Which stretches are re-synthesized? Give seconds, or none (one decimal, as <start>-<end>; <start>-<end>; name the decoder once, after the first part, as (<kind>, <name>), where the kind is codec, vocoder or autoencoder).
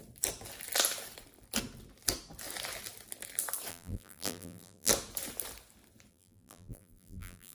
3.7-4.9 (vocoder, BigVGAN v2); 6.1-7.5